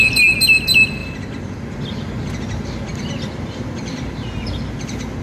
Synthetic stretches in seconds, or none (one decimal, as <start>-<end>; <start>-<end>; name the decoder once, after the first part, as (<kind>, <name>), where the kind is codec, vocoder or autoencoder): 1.0-1.7 (vocoder, BigVGAN v2); 2.9-4.4